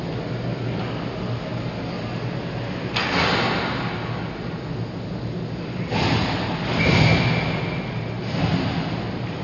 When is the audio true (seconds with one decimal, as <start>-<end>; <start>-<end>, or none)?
0.0-9.4